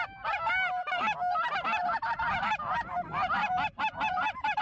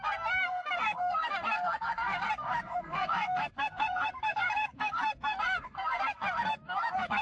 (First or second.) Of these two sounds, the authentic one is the first